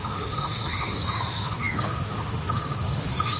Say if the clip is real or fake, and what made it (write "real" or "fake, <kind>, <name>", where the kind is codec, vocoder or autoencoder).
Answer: fake, autoencoder, DAC-VAE